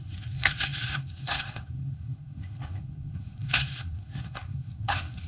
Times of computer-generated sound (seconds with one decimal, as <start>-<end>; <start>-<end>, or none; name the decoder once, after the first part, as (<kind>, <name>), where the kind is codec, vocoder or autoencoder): 0.0-5.3 (codec, SNAC)